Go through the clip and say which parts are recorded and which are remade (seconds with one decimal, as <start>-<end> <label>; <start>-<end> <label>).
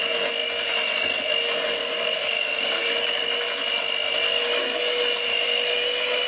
0.0-1.8 recorded; 1.8-3.2 remade; 3.2-4.3 recorded; 4.3-4.8 remade; 4.8-5.3 recorded; 5.3-6.3 remade